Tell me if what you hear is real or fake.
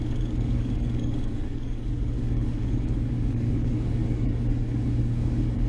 fake